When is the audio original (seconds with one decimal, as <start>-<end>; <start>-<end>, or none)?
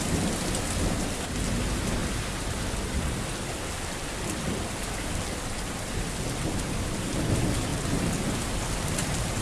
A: 0.0-2.0; 5.9-9.4